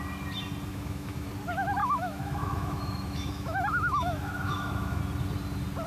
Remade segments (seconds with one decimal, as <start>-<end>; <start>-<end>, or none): 0.7-1.3; 1.8-5.0